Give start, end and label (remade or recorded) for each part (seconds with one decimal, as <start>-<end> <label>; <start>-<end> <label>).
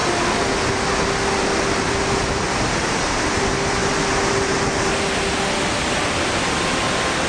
0.0-7.3 recorded